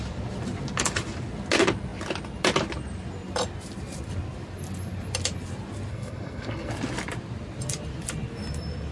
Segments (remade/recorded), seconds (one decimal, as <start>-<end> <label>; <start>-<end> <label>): 0.0-5.9 recorded; 5.9-6.7 remade; 6.7-8.9 recorded

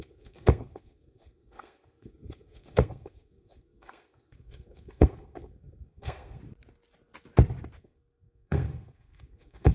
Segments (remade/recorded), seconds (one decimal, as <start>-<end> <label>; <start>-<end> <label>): 0.0-6.4 remade; 6.4-7.8 recorded; 7.8-9.7 remade

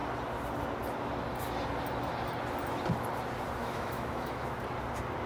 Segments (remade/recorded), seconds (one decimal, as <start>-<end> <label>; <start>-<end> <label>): 0.0-3.6 recorded; 3.6-4.6 remade; 4.6-5.3 recorded